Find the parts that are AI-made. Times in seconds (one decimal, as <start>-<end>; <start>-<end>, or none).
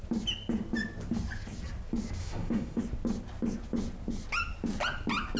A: 2.2-2.8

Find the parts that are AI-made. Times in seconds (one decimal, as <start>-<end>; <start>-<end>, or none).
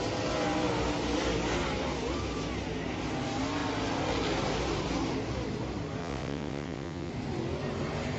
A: 6.0-7.1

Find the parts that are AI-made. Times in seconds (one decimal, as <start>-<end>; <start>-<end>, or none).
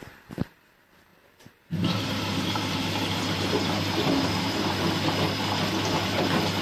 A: 1.1-4.9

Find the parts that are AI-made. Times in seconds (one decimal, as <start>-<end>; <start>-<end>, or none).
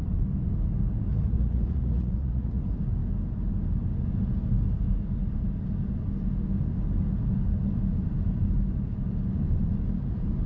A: 1.1-2.6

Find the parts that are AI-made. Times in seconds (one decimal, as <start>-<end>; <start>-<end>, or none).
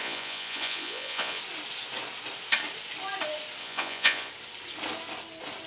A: 0.0-1.4; 3.6-4.3